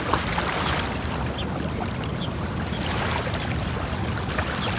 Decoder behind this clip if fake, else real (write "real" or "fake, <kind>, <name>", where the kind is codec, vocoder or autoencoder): real